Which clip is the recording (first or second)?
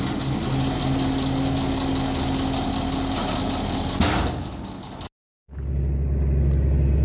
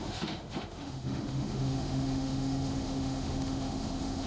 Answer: first